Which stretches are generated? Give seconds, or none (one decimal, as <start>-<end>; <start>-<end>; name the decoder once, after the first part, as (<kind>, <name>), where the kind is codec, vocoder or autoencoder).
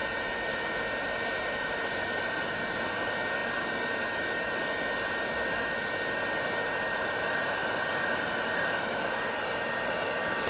0.0-2.2 (vocoder, BigVGAN v2)